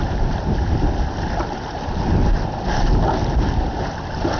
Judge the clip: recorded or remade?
recorded